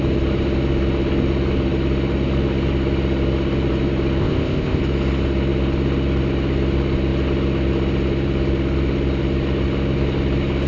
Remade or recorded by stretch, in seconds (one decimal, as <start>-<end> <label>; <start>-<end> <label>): 0.0-4.2 recorded; 4.2-4.8 remade; 4.8-10.7 recorded